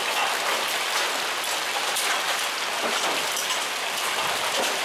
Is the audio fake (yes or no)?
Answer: no